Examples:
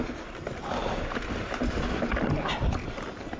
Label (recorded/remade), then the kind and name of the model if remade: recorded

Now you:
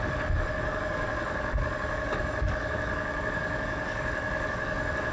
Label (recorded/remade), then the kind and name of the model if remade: remade, codec, DAC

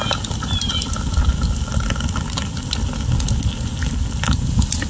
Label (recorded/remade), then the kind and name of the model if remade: recorded